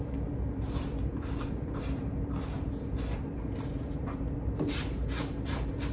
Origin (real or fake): fake